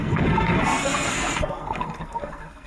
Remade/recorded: remade